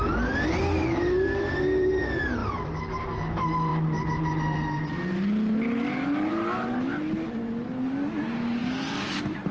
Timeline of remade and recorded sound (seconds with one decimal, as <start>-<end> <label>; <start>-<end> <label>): 0.0-9.5 recorded